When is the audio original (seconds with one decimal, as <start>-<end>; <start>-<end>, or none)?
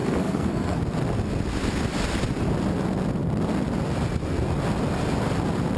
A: 0.8-5.8